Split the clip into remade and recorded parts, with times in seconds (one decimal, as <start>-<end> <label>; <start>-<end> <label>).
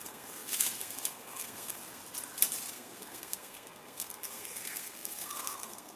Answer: 0.0-2.0 remade; 2.0-2.7 recorded; 2.7-6.0 remade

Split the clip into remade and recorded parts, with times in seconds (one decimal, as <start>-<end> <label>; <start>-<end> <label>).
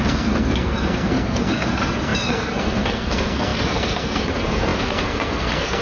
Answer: 0.0-5.8 remade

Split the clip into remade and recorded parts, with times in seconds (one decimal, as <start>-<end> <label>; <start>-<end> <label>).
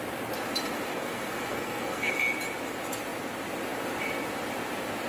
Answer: 0.0-0.9 recorded; 0.9-2.1 remade; 2.1-5.1 recorded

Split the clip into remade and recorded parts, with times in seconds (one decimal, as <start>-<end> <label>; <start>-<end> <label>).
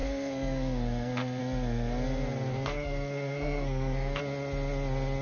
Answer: 0.0-1.4 remade; 1.4-2.5 recorded; 2.5-4.2 remade; 4.2-5.2 recorded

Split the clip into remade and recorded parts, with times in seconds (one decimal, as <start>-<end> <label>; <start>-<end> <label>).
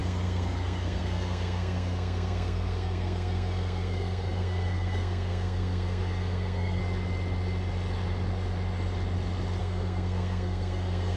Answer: 0.0-6.8 remade; 6.8-9.6 recorded; 9.6-11.2 remade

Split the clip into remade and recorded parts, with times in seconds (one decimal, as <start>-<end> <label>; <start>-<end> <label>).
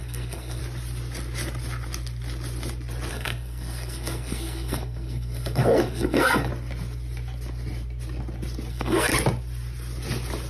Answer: 0.0-0.6 remade; 0.6-3.1 recorded; 3.1-6.5 remade; 6.5-8.7 recorded; 8.7-9.1 remade; 9.1-10.5 recorded